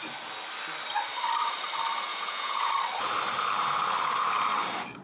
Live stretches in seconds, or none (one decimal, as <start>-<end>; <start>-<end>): 0.0-2.1; 2.7-5.0